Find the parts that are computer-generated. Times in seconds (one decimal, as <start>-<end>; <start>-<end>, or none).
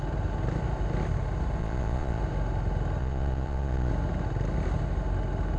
1.6-2.2; 3.0-3.9